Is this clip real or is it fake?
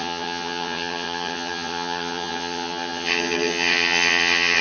fake